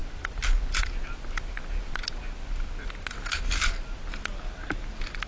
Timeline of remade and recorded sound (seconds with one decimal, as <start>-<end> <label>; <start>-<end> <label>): 0.0-5.3 recorded